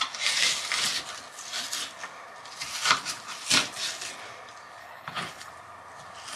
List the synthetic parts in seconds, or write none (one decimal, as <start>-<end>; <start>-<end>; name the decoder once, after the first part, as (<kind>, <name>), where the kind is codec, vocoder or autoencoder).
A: 4.8-5.5 (codec, HILCodec)